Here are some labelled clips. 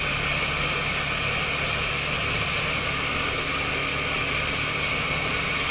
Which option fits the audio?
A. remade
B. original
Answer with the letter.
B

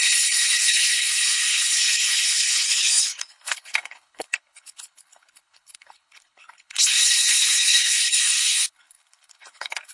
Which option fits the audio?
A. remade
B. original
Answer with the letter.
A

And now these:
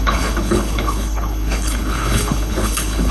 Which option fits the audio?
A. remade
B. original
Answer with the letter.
A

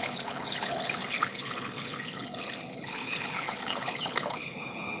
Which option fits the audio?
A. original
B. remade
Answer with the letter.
B